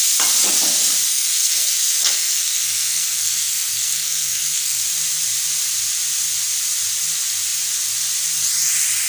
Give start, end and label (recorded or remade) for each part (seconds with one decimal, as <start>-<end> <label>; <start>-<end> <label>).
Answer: 0.0-1.1 recorded; 1.1-4.8 remade; 4.8-9.1 recorded